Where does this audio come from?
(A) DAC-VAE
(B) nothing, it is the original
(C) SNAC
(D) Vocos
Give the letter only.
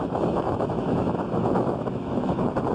A